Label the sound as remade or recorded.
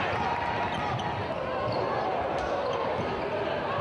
recorded